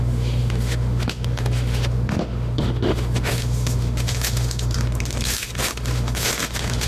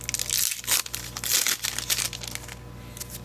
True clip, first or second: second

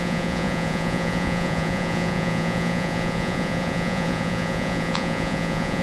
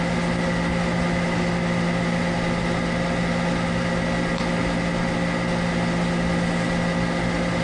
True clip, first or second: second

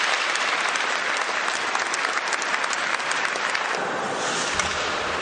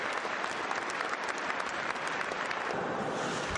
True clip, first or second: first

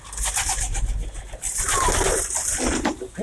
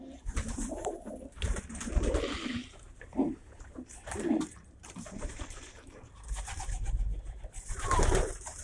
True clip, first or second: first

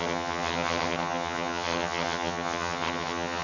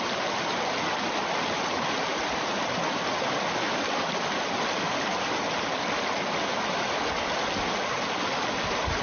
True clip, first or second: second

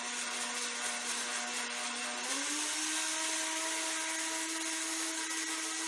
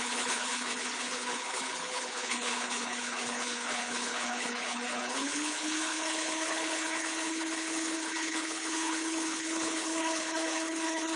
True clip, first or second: first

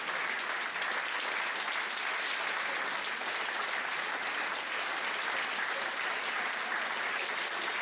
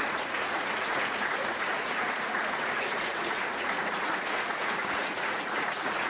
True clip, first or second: first